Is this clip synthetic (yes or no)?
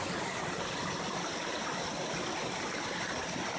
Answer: no